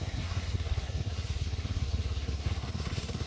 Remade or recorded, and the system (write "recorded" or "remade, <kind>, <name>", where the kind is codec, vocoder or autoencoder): remade, codec, SNAC